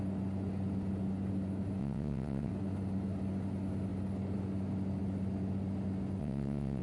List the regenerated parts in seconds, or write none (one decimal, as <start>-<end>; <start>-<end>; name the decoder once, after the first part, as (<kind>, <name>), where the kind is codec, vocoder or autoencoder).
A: 1.8-2.5 (vocoder, WaveNeXt); 6.2-6.8